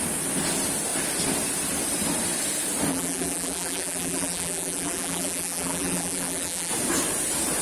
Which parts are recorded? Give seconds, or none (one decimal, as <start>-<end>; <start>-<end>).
0.0-2.9; 6.7-7.6